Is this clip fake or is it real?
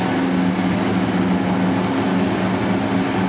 real